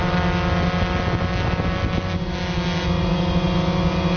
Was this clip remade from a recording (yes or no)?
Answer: no